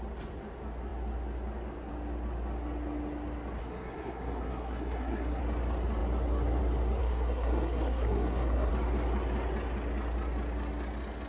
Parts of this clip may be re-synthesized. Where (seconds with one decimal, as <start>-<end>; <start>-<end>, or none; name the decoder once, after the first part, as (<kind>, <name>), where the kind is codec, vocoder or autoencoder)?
3.6-5.4 (codec, SNAC); 7.0-8.7

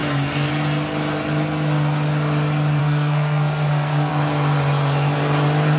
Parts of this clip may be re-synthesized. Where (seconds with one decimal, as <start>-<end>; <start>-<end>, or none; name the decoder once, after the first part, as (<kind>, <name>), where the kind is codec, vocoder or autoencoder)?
2.8-4.1 (codec, SNAC)

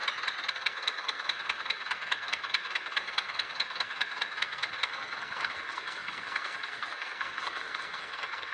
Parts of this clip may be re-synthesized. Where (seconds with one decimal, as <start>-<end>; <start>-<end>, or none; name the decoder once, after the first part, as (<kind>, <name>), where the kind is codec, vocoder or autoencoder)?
0.5-8.5 (codec, SNAC)

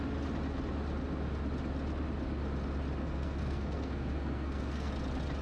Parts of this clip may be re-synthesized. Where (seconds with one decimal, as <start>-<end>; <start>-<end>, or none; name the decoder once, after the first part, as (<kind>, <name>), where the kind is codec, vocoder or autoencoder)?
3.0-4.9 (codec, SNAC)

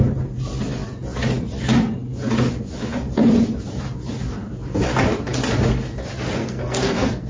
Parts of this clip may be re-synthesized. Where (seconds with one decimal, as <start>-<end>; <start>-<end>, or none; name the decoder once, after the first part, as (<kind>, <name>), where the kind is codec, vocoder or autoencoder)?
6.4-7.3 (codec, SNAC)

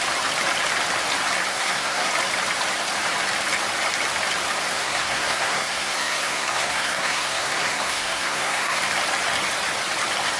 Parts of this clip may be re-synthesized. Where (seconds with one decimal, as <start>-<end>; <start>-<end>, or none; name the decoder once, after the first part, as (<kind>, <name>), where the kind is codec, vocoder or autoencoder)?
1.5-2.1 (codec, SNAC); 4.7-8.8

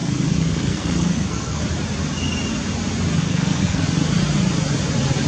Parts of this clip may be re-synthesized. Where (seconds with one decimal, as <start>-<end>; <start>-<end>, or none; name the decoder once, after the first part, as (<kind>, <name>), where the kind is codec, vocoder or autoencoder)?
0.0-1.6 (codec, SNAC); 3.2-3.8